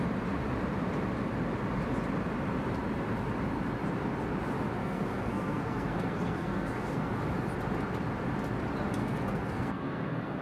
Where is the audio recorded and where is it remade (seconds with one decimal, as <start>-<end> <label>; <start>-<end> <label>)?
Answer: 0.0-4.8 recorded; 4.8-7.2 remade; 7.2-9.0 recorded; 9.0-10.4 remade